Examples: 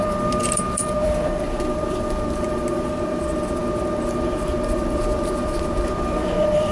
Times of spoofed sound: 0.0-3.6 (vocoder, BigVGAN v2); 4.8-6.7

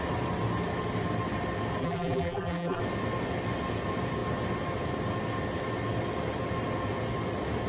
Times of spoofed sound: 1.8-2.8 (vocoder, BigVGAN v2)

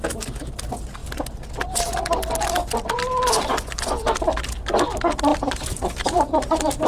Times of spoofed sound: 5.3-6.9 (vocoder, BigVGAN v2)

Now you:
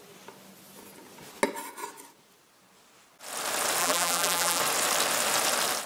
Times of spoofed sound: 3.8-4.6 (vocoder, BigVGAN v2)

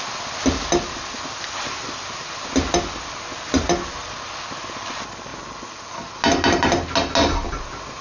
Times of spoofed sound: none

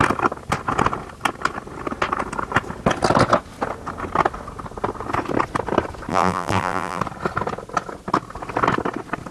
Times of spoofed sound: 6.1-7.0 (vocoder, BigVGAN v2)